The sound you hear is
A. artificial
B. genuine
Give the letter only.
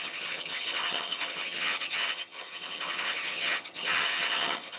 A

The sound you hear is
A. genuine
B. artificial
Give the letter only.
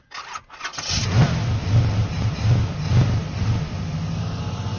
A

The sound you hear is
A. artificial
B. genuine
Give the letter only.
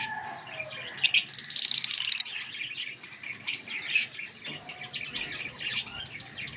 B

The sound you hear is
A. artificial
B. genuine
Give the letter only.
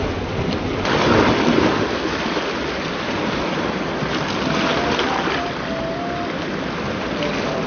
B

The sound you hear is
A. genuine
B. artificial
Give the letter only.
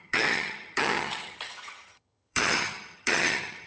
B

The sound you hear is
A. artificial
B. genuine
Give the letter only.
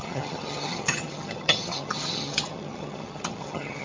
A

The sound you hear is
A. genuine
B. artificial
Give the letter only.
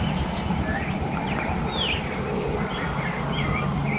A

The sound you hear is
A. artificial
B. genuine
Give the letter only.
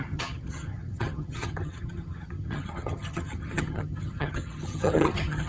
A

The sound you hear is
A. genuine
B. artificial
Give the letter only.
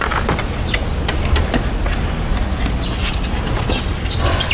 A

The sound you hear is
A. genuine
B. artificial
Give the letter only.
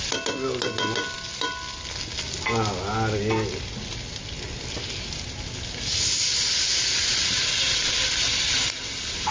A